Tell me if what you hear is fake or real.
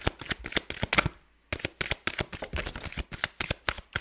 real